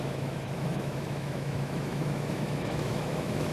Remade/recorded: remade